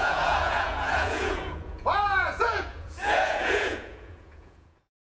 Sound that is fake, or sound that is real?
fake